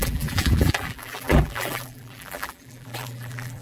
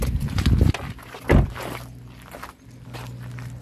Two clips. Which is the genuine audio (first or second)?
second